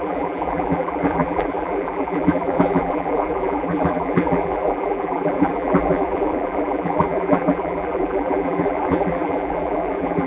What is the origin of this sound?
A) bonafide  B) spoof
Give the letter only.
B